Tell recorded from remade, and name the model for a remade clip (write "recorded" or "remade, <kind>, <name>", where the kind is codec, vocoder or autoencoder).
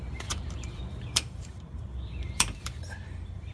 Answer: remade, vocoder, BigVGAN v2